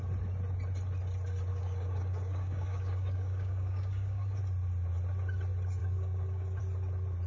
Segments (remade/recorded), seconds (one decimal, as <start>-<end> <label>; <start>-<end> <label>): 0.0-1.5 recorded; 1.5-4.4 remade; 4.4-5.8 recorded; 5.8-6.6 remade; 6.6-7.3 recorded